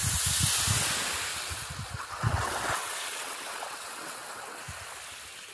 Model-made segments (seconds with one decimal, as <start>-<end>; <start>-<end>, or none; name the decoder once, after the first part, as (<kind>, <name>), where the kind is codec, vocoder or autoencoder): 1.3-4.6 (vocoder, WaveNeXt)